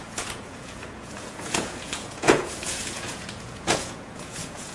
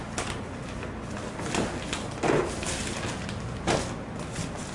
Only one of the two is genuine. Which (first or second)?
second